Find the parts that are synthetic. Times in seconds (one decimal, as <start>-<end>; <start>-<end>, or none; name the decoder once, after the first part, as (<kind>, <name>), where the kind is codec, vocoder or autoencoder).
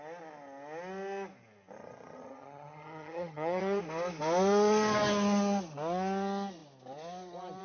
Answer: 1.8-3.8 (vocoder, HiFi-GAN)